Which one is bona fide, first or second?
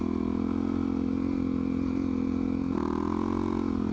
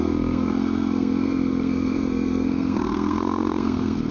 first